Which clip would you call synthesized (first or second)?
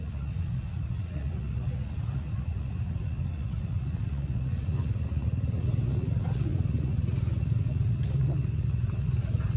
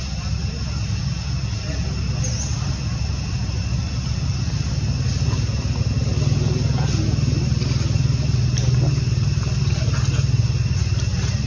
first